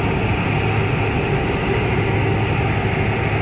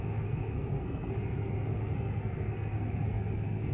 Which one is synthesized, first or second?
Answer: second